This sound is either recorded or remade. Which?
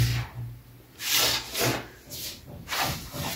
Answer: recorded